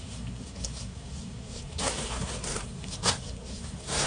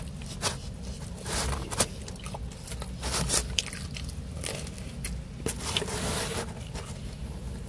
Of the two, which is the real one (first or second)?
second